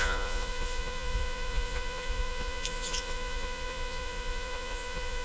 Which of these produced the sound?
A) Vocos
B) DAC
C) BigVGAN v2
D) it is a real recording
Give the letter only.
A